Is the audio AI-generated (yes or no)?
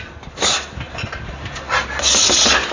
no